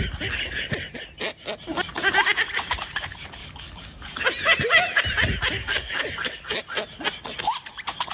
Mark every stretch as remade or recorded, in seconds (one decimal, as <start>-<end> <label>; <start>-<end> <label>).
0.0-3.4 recorded; 3.4-4.2 remade; 4.2-5.6 recorded; 5.6-6.6 remade; 6.6-8.1 recorded